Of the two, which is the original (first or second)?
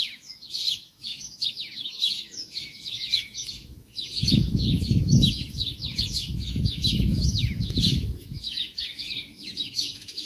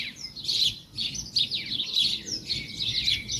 second